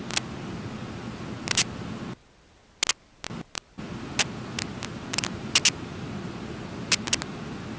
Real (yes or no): yes